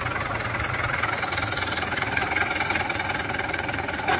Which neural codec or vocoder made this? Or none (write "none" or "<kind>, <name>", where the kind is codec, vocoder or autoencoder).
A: vocoder, Vocos